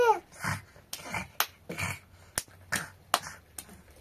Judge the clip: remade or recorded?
recorded